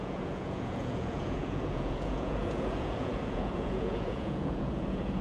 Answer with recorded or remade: remade